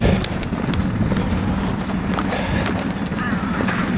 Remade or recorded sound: recorded